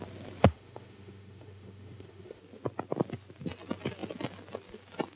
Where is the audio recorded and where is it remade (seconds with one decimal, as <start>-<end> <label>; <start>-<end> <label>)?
0.0-0.4 recorded; 0.4-2.4 remade; 2.4-5.2 recorded